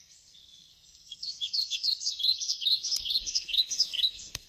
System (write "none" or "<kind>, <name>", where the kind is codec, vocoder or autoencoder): codec, SNAC